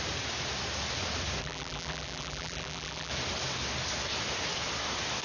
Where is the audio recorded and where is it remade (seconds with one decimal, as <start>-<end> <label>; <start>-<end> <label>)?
0.0-1.4 recorded; 1.4-3.1 remade; 3.1-5.2 recorded